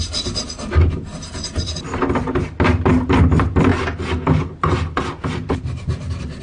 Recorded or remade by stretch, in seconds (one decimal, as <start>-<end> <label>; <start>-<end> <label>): 0.0-6.4 recorded